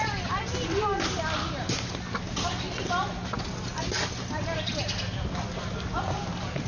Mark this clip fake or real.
real